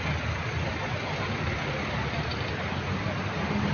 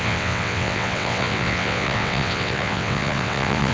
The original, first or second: first